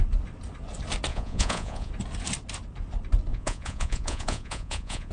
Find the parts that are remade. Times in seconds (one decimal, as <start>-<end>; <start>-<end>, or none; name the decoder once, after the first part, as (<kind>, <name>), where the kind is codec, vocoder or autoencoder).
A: 1.1-1.9 (vocoder, Vocos); 3.3-5.1